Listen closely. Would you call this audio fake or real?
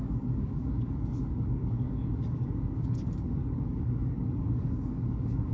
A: fake